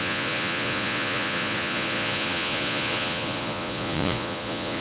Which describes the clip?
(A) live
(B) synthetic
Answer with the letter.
B